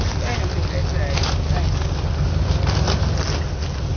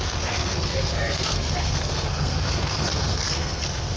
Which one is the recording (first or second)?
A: first